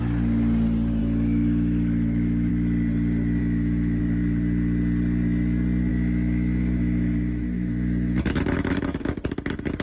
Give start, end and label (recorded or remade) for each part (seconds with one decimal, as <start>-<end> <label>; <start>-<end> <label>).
0.0-1.0 recorded; 1.0-2.5 remade; 2.5-3.4 recorded; 3.4-4.0 remade; 4.0-5.9 recorded; 5.9-9.0 remade; 9.0-9.8 recorded